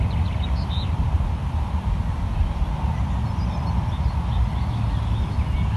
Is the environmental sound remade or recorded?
recorded